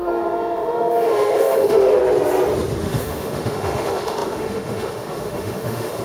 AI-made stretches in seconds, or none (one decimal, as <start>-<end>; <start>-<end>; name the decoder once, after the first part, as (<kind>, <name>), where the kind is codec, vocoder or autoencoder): 0.0-2.0 (autoencoder, DAC-VAE); 2.8-6.0